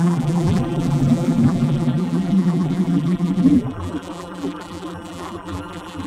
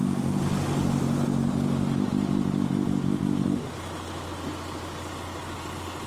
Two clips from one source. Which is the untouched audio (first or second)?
second